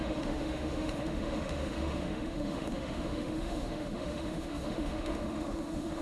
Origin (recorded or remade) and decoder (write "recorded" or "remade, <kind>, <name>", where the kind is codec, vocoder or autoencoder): remade, autoencoder, DAC-VAE